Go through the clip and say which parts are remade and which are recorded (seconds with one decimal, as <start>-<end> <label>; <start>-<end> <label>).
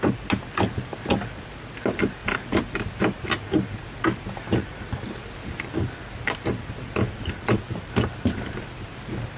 0.0-9.4 recorded